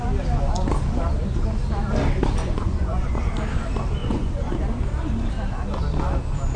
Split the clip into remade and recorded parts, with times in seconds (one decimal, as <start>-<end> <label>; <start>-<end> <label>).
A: 0.0-2.4 recorded; 2.4-3.2 remade; 3.2-4.0 recorded; 4.0-4.5 remade; 4.5-6.6 recorded